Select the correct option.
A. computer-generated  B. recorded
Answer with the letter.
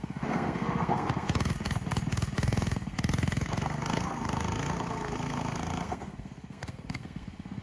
A